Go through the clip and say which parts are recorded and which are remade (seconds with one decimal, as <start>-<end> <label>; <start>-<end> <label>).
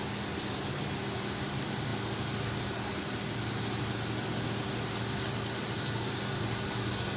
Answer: 0.0-7.2 recorded